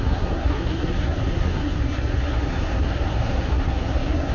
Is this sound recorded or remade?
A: remade